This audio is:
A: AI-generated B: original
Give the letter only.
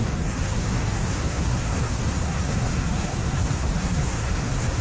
A